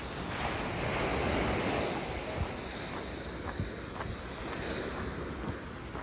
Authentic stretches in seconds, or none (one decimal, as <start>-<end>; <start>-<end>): 0.0-6.0